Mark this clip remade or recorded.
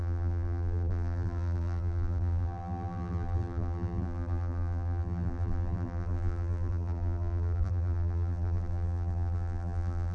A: remade